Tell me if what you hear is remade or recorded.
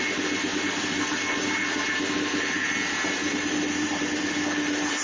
remade